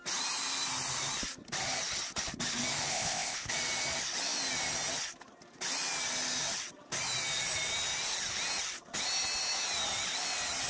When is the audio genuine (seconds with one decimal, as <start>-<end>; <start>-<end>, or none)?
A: 0.0-2.9; 3.5-10.7

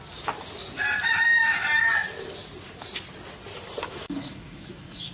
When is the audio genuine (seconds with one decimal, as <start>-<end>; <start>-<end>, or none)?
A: 0.0-3.9

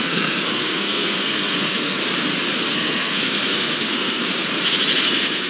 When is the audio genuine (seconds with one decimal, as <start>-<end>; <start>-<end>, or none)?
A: 2.0-2.7; 4.2-5.0